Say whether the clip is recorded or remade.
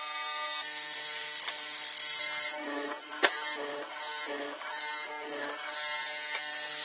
recorded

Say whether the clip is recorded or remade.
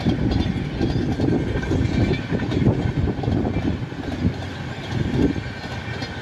recorded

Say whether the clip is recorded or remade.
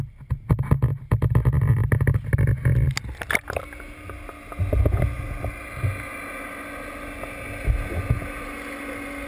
recorded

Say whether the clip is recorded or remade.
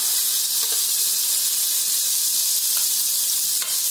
recorded